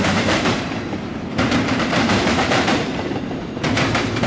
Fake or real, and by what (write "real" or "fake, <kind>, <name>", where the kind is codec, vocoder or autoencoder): fake, vocoder, BigVGAN v2